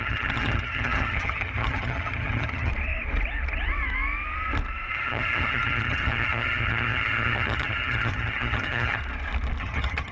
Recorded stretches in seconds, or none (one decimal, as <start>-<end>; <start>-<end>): 2.7-4.9; 9.0-9.6